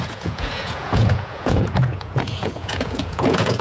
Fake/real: fake